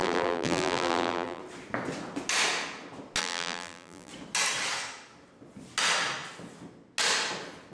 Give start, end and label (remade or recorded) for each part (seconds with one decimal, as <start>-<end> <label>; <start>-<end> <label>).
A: 0.0-1.4 remade; 1.4-3.2 recorded; 3.2-4.1 remade; 4.1-7.7 recorded